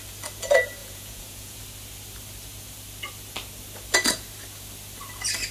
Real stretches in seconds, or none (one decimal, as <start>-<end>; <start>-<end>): 0.0-0.8; 1.6-5.5